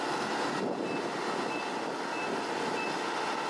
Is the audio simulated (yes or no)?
no